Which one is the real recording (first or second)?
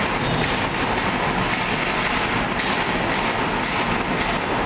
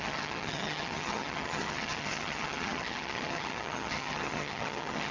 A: first